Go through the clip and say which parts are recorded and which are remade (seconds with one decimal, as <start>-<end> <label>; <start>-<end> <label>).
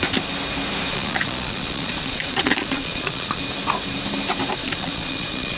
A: 0.0-0.9 recorded; 0.9-3.4 remade; 3.4-4.6 recorded; 4.6-5.6 remade